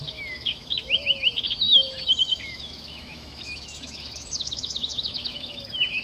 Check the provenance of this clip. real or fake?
fake